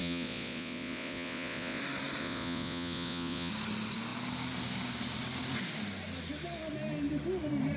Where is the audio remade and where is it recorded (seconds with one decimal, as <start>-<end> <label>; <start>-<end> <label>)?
0.0-1.8 remade; 1.8-2.2 recorded; 2.2-3.5 remade; 3.5-7.8 recorded